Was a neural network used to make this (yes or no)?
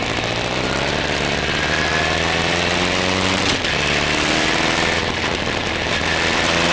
no